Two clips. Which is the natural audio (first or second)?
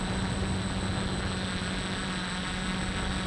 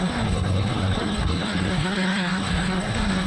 first